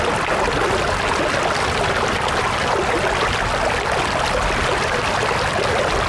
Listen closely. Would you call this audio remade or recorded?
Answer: recorded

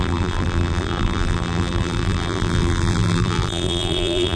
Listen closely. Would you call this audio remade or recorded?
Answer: remade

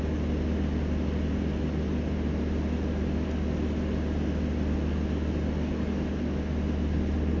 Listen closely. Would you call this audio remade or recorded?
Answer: recorded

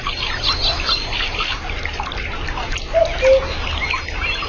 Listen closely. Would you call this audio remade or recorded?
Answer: recorded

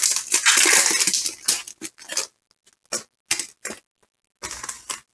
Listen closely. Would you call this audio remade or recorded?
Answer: recorded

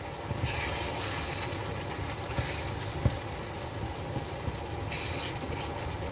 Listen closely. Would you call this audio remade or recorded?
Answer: recorded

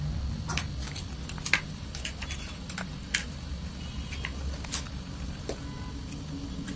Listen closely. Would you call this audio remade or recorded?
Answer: recorded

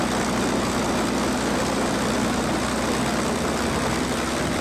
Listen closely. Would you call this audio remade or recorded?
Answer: recorded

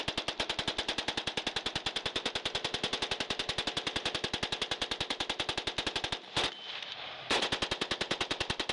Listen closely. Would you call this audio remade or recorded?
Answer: recorded